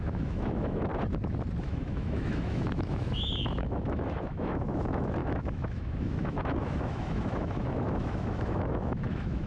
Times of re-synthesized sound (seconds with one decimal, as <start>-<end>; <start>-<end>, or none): 0.0-0.9; 1.6-9.5